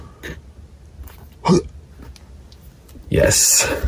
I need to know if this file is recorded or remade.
recorded